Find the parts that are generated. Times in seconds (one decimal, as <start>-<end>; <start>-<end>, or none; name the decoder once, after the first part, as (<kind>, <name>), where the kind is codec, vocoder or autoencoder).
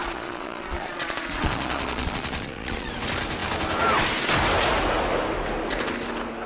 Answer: 0.0-2.9 (vocoder, Vocos)